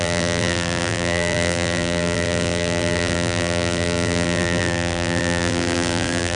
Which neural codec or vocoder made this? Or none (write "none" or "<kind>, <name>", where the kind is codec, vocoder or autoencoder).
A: vocoder, BigVGAN v2